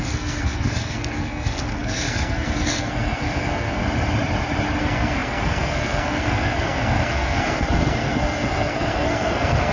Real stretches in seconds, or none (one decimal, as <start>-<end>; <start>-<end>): 3.8-4.8